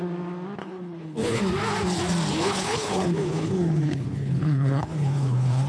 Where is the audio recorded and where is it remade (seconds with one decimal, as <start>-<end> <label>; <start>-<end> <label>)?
0.0-0.6 recorded; 0.6-1.4 remade; 1.4-2.3 recorded; 2.3-5.7 remade